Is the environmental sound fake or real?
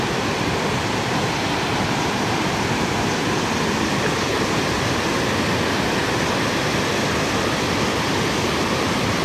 real